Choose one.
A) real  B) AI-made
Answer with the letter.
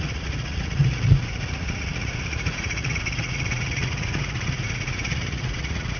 B